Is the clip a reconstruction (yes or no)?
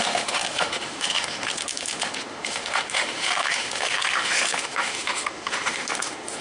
yes